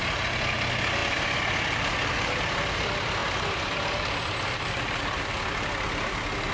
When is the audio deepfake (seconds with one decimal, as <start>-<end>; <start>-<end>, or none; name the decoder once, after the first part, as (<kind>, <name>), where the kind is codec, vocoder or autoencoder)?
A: none